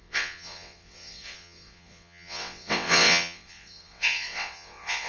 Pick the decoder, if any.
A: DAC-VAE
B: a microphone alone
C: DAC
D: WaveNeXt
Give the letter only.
D